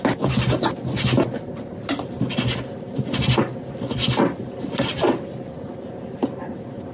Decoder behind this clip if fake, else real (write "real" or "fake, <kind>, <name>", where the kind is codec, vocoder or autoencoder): real